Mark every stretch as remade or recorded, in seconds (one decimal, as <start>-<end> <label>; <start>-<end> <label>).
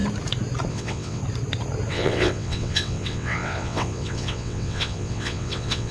0.0-0.7 recorded; 0.7-1.2 remade; 1.2-1.9 recorded; 1.9-5.9 remade